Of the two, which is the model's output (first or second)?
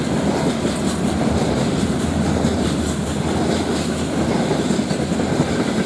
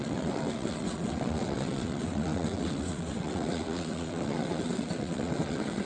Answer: second